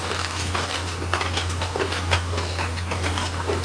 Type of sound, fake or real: fake